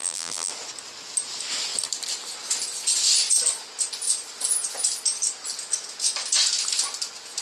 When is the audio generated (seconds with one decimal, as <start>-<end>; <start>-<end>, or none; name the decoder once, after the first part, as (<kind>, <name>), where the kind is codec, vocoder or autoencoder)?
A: 0.0-0.5 (vocoder, BigVGAN v2)